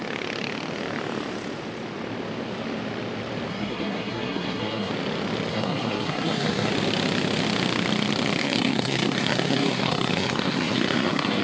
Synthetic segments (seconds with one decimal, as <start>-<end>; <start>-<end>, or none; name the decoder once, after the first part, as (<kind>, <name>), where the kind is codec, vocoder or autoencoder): 3.5-4.9 (codec, SNAC); 5.5-6.7; 8.4-11.4